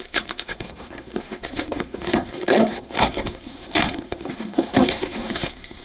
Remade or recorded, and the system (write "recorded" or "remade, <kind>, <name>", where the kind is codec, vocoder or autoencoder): remade, codec, SNAC